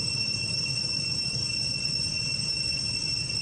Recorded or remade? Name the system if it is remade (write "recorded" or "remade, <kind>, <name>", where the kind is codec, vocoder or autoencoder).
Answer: recorded